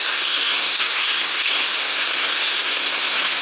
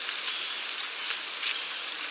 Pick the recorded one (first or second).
second